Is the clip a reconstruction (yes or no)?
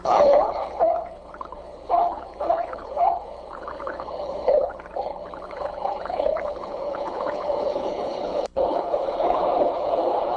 yes